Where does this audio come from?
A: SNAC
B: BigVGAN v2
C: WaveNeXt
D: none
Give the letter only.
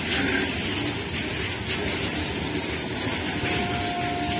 D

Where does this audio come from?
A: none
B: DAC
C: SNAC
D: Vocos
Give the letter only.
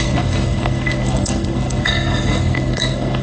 C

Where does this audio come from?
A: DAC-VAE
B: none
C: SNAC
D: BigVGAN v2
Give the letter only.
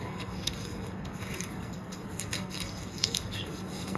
C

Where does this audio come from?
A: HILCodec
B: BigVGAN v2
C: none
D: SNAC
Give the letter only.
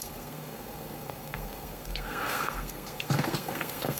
D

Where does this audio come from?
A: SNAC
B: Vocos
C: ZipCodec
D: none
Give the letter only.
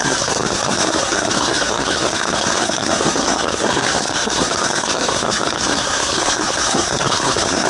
A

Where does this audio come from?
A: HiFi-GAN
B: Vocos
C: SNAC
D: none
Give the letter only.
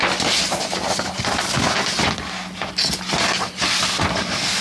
D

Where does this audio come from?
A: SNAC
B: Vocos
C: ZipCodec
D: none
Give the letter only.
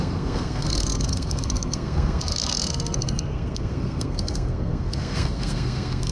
A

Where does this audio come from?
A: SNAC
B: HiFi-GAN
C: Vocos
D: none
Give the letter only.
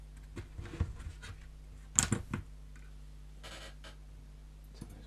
D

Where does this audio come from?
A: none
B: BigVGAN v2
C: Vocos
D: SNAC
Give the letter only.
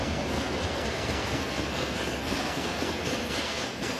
D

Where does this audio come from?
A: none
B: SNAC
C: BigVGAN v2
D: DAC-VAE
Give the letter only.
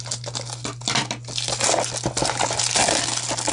A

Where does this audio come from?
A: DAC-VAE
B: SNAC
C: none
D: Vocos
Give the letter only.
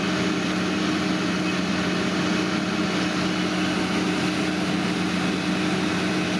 C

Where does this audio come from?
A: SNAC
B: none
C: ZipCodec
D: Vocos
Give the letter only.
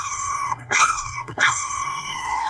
A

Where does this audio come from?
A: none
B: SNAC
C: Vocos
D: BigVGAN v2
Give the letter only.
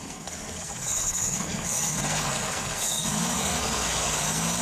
B